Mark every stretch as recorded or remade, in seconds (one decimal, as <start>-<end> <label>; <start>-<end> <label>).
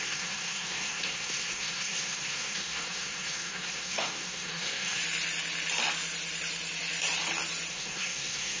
0.0-5.0 remade; 5.0-7.7 recorded; 7.7-8.6 remade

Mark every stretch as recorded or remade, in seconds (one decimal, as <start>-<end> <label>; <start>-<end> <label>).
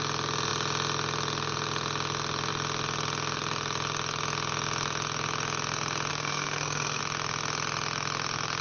0.0-6.1 recorded; 6.1-7.0 remade; 7.0-8.6 recorded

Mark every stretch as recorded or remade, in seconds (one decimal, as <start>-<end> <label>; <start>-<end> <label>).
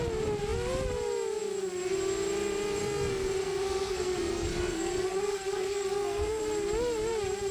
0.0-2.8 recorded; 2.8-6.4 remade; 6.4-7.5 recorded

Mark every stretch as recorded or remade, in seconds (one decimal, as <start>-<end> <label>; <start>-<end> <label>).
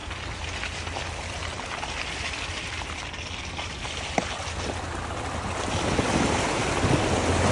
0.0-7.5 recorded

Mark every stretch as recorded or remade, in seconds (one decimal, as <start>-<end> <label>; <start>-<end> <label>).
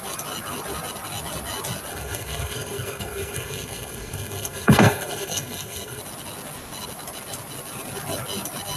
0.0-1.9 recorded; 1.9-6.0 remade; 6.0-8.8 recorded